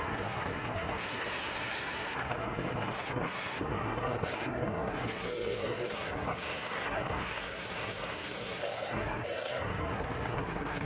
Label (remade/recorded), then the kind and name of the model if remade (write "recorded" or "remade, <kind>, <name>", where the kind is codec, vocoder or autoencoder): remade, codec, SNAC